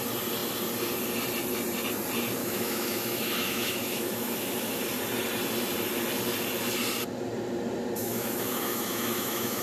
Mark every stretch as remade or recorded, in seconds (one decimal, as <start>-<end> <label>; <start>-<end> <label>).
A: 0.0-2.4 recorded; 2.4-4.8 remade; 4.8-8.0 recorded; 8.0-9.6 remade